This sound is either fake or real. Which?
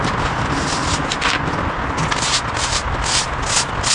real